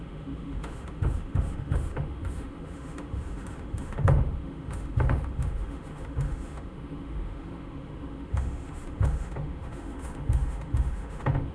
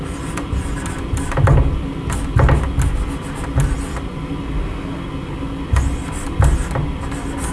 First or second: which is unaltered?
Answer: second